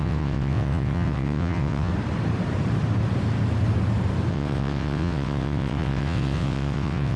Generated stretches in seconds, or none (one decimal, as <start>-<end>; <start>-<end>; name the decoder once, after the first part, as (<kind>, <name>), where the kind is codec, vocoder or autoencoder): 0.0-1.9 (vocoder, WaveNeXt); 4.3-7.2